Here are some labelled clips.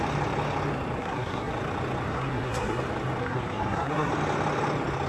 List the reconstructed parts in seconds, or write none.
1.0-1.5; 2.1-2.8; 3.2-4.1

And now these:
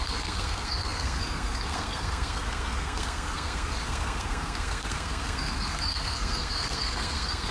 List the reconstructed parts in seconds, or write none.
0.0-7.5

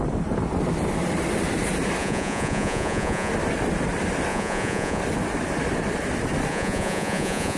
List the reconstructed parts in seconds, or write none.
2.0-3.3; 4.3-5.0; 6.5-7.6

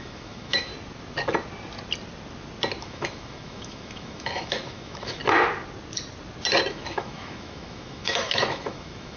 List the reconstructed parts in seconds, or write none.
0.0-0.7; 2.8-5.2; 6.7-9.2

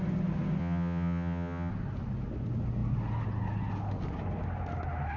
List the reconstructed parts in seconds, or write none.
0.6-1.7

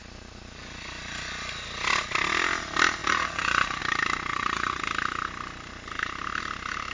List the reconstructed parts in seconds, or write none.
3.0-3.8; 4.3-4.8

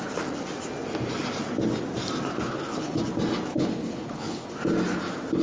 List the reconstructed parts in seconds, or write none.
2.3-3.0; 3.5-4.5

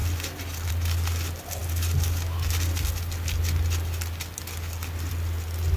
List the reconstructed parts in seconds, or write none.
0.0-0.7; 1.6-5.1